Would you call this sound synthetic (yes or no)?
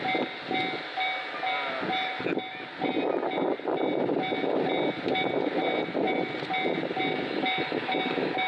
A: no